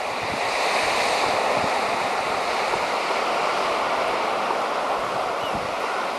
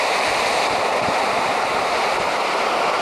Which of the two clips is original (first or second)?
first